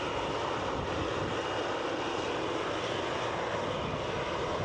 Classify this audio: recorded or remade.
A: recorded